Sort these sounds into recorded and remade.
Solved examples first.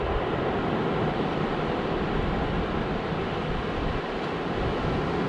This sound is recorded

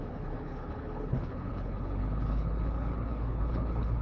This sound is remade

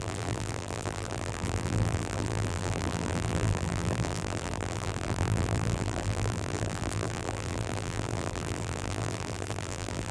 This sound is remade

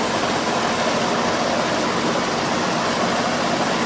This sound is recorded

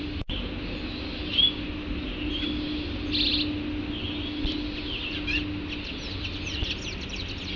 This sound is recorded